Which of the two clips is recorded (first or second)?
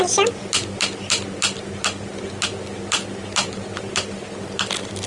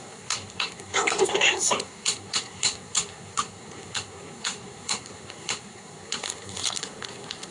first